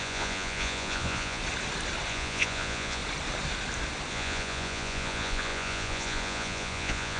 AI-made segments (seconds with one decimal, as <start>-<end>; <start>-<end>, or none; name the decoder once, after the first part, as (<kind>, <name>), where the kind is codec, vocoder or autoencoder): 0.0-1.4 (vocoder, Vocos); 2.1-3.0; 4.1-7.2